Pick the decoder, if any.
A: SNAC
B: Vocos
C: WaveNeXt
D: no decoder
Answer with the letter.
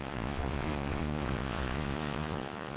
B